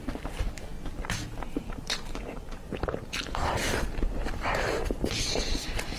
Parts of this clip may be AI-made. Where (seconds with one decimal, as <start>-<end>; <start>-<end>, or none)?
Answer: 0.0-6.0